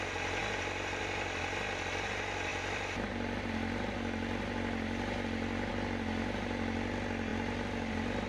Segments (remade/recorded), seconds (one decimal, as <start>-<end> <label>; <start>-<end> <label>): 0.0-8.3 recorded